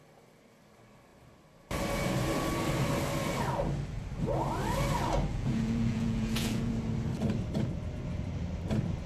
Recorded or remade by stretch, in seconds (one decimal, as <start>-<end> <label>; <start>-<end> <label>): 0.0-5.3 recorded; 5.3-6.7 remade; 6.7-9.1 recorded